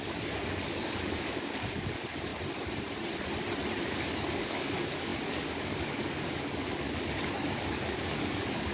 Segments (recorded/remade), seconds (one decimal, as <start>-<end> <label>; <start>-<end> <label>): 0.0-2.3 remade; 2.3-3.8 recorded; 3.8-8.7 remade